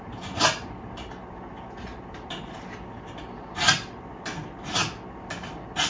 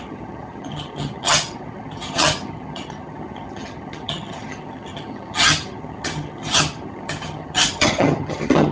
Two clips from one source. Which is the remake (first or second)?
second